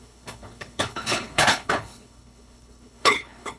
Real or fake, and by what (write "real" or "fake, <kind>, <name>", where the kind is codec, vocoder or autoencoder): fake, codec, HILCodec